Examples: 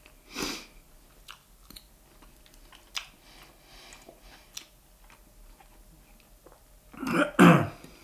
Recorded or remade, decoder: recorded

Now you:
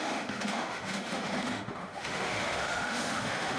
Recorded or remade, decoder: remade, autoencoder, DAC-VAE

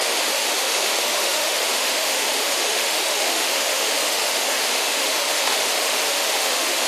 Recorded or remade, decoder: remade, autoencoder, DAC-VAE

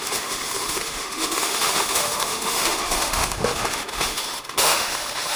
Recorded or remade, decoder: remade, autoencoder, DAC-VAE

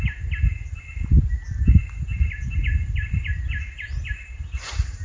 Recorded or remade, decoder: recorded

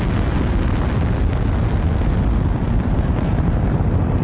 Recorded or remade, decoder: recorded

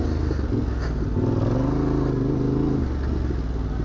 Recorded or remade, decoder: recorded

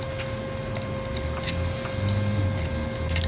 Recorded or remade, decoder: recorded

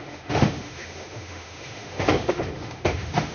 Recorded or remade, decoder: remade, autoencoder, DAC-VAE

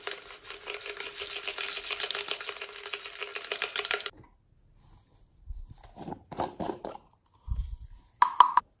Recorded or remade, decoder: recorded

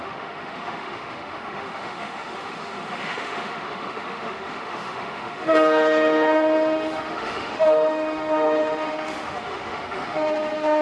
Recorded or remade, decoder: remade, autoencoder, DAC-VAE